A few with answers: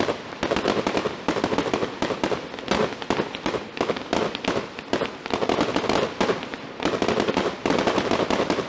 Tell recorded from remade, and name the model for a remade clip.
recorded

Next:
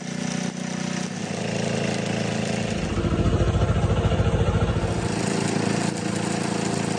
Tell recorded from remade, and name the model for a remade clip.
recorded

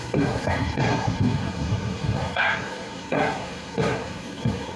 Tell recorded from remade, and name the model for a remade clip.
remade, codec, SNAC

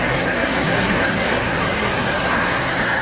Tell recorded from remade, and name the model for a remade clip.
remade, codec, SNAC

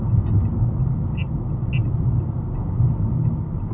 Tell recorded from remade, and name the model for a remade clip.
recorded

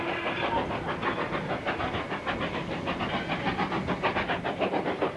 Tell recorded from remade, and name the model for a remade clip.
recorded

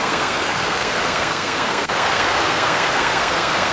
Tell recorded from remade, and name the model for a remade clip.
remade, codec, SNAC